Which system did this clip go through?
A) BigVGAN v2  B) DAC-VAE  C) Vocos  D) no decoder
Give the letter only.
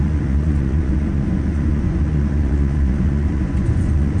C